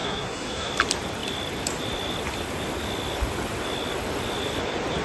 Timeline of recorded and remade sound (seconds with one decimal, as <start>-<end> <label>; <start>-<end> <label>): 0.0-0.7 remade; 0.7-5.0 recorded